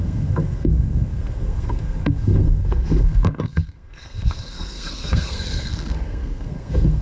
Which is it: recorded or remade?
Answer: remade